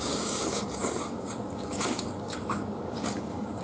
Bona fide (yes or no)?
no